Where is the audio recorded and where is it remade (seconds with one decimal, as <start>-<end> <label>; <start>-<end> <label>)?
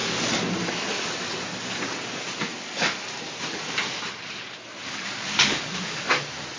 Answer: 0.0-4.8 recorded; 4.8-6.1 remade; 6.1-6.6 recorded